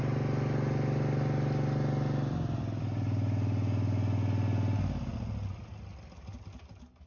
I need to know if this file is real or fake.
real